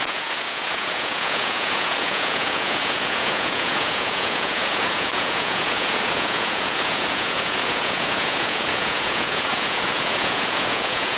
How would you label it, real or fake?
fake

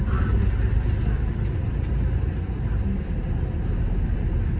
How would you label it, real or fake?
real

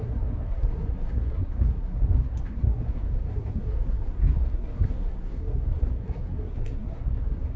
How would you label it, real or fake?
fake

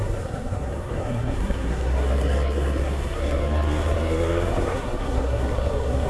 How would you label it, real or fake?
fake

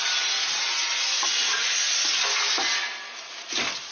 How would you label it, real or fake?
real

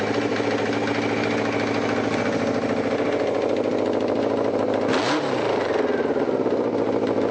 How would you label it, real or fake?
real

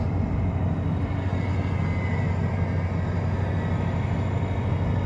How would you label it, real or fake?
real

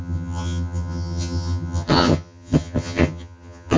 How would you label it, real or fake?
fake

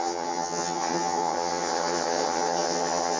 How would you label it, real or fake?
fake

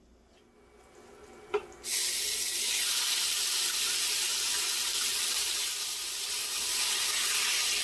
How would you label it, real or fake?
real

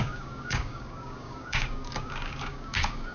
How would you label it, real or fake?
fake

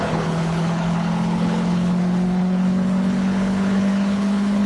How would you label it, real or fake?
fake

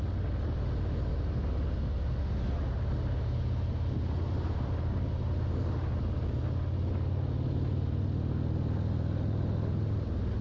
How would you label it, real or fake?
real